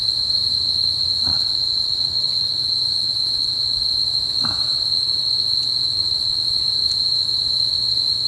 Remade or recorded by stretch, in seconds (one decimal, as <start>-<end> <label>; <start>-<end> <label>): 0.0-1.3 recorded; 1.3-3.8 remade; 3.8-4.7 recorded; 4.7-5.3 remade; 5.3-5.8 recorded; 5.8-6.6 remade; 6.6-8.3 recorded